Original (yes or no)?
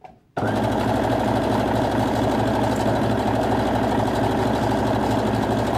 yes